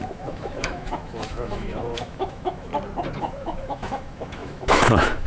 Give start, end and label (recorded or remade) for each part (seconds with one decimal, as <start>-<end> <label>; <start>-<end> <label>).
0.0-2.7 remade; 2.7-3.2 recorded; 3.2-5.3 remade